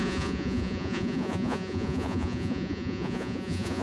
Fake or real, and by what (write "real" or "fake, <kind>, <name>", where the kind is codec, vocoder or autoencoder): fake, vocoder, Vocos